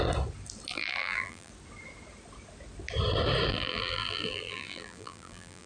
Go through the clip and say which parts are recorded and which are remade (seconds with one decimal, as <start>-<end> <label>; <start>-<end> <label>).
0.0-0.7 recorded; 0.7-1.5 remade; 1.5-3.5 recorded; 3.5-5.7 remade